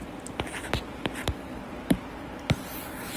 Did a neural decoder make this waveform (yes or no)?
no